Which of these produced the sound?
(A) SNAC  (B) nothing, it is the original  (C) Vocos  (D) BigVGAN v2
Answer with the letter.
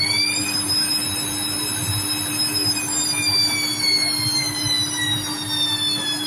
B